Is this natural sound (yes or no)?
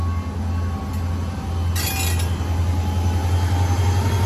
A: yes